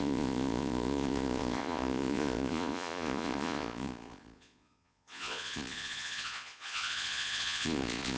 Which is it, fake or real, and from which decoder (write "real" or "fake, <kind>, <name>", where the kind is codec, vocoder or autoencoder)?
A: fake, vocoder, Vocos